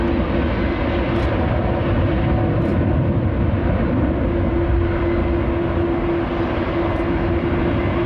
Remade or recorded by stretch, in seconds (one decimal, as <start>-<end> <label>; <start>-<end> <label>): 0.0-2.7 recorded; 2.7-4.3 remade; 4.3-8.1 recorded